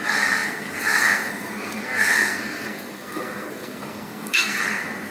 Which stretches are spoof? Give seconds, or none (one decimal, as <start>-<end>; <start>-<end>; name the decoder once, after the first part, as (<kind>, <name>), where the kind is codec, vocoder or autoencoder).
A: 0.0-5.1 (codec, SNAC)

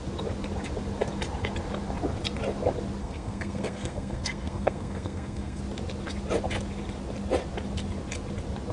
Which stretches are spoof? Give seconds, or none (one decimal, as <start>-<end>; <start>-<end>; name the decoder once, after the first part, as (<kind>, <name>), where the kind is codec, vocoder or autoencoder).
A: 3.0-5.6 (codec, SNAC)